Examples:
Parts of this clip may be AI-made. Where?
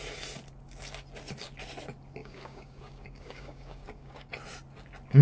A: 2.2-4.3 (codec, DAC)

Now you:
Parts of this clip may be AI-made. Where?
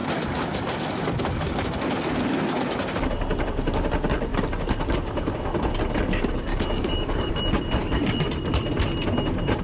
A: 6.5-7.3 (codec, DAC); 7.8-8.3